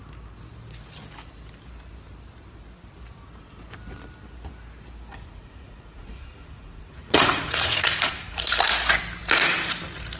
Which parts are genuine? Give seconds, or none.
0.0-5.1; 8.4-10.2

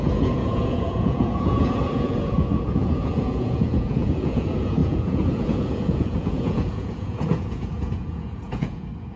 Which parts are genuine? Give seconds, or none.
none